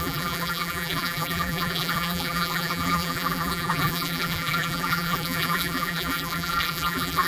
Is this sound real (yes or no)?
no